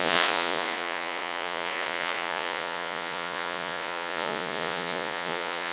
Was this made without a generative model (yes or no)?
no